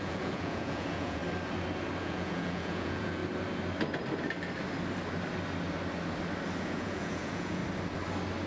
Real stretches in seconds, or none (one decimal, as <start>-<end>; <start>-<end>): 1.2-2.0; 3.2-6.6; 7.6-8.5